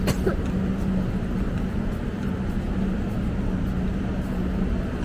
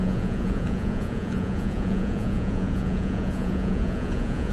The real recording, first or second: first